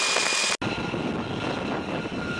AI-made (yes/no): no